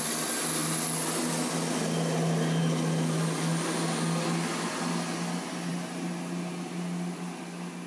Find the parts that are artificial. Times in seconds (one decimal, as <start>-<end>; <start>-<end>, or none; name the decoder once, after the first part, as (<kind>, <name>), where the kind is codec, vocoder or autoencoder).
none